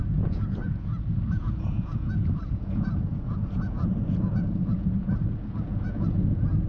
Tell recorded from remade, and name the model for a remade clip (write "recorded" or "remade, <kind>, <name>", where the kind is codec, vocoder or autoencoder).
remade, vocoder, Vocos